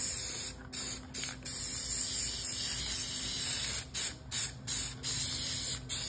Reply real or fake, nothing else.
real